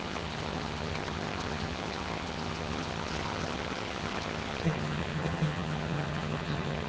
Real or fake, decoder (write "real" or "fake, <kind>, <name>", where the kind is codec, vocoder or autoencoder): fake, vocoder, HiFi-GAN